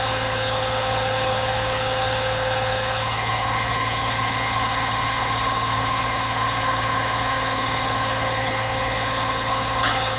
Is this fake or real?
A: fake